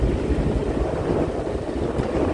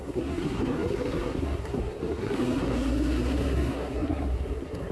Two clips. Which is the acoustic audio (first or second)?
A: first